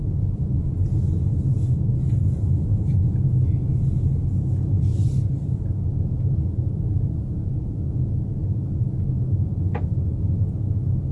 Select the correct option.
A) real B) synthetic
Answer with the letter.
A